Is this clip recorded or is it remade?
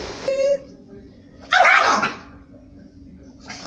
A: remade